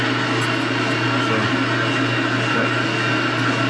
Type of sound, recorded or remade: recorded